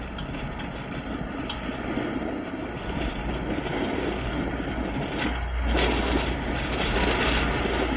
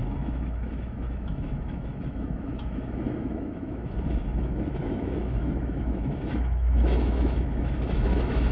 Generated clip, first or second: second